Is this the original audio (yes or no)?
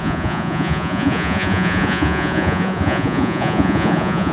no